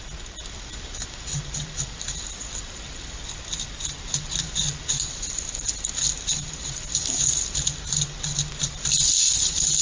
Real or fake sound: real